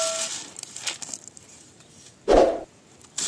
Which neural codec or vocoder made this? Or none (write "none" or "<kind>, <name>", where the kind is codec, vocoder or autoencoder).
none